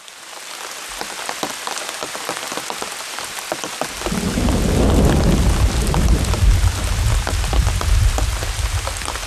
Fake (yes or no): no